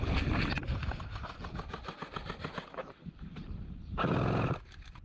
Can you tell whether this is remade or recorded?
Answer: recorded